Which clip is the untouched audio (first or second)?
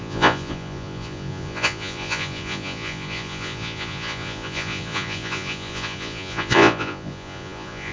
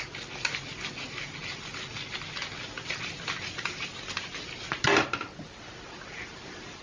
second